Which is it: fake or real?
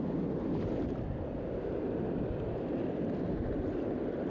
real